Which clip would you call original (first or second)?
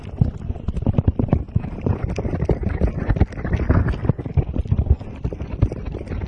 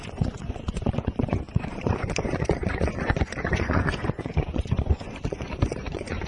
first